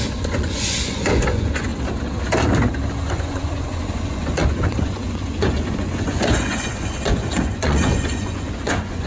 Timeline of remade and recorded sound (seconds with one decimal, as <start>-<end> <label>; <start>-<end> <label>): 0.0-1.7 remade; 1.7-2.9 recorded; 2.9-9.1 remade